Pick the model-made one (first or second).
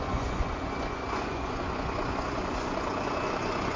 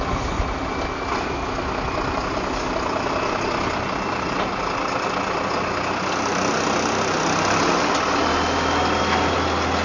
first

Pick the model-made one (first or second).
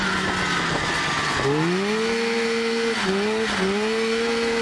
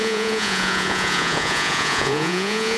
second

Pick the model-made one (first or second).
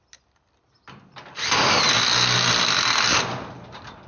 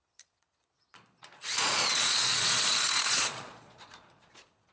second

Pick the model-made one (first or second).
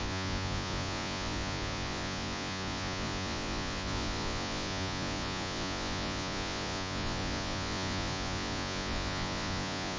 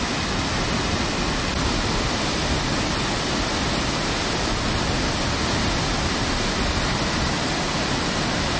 first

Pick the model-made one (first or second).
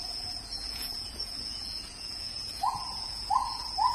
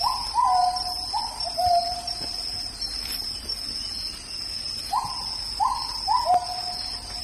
first